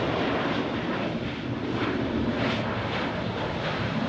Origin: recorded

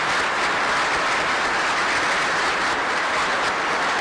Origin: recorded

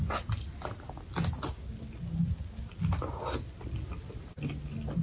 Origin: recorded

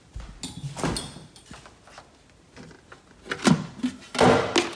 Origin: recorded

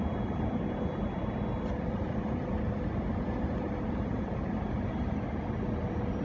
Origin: recorded